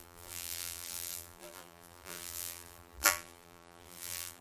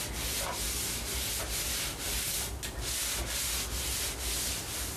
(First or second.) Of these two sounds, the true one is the second